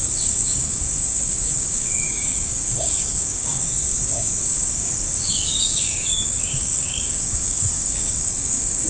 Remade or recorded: remade